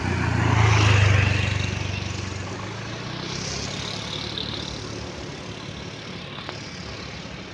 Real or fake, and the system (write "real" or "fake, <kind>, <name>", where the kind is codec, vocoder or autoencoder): real